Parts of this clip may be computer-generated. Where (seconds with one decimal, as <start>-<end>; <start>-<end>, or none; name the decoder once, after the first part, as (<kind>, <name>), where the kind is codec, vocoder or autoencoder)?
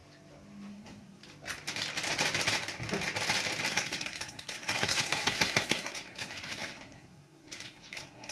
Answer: 0.7-1.2 (codec, SNAC); 3.7-8.3